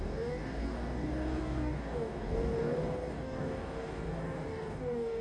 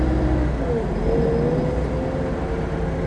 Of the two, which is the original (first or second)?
second